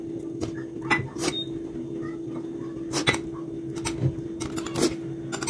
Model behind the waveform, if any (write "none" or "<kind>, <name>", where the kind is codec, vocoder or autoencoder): none